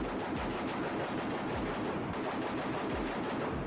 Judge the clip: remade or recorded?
recorded